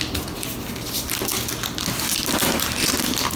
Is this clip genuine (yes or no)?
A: yes